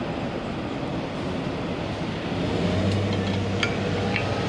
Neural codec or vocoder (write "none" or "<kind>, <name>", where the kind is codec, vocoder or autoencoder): none